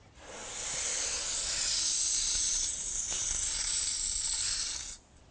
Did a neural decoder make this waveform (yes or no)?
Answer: no